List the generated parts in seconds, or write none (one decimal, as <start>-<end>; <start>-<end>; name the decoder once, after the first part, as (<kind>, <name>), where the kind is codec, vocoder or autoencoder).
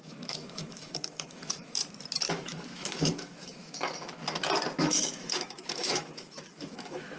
0.0-1.8 (autoencoder, DAC-VAE); 2.3-4.2; 4.8-7.2